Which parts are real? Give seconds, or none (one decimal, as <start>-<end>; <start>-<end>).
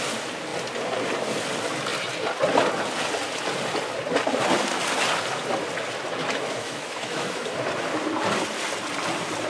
0.0-6.2; 7.5-9.5